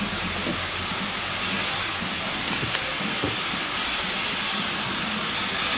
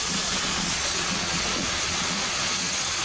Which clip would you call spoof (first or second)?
second